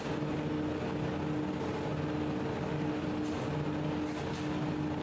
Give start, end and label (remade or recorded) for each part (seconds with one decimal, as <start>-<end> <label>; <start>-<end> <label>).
0.0-5.0 recorded

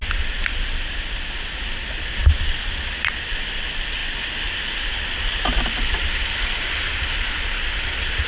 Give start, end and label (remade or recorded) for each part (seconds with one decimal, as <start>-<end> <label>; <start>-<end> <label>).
0.0-8.3 recorded

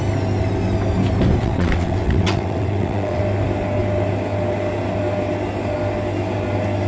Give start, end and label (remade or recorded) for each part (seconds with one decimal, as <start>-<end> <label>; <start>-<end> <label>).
0.0-1.4 recorded; 1.4-3.2 remade; 3.2-6.9 recorded

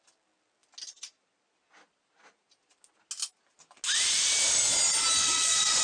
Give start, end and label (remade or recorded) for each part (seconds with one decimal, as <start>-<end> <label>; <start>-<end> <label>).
0.0-5.2 recorded; 5.2-5.8 remade

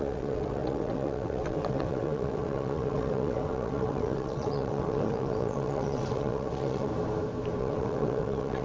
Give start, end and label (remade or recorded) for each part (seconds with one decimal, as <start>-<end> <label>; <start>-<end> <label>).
0.0-6.9 remade; 6.9-7.6 recorded; 7.6-8.6 remade

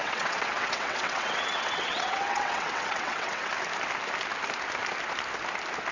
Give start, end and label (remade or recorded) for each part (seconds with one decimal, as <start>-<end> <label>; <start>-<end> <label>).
0.0-3.5 remade; 3.5-5.9 recorded

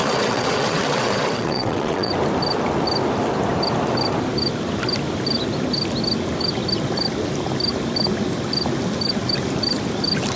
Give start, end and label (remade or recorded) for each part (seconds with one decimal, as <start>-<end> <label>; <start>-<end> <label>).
0.0-2.1 remade; 2.1-10.4 recorded